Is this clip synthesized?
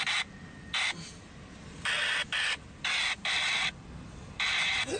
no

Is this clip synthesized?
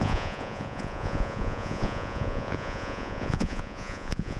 yes